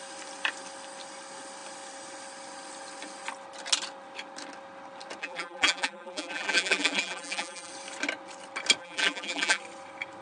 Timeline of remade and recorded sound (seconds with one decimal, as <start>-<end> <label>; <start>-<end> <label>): 0.0-5.2 recorded; 5.2-7.7 remade; 7.7-8.8 recorded; 8.8-9.6 remade; 9.6-10.2 recorded